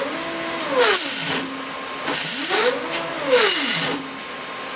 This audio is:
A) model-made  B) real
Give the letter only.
B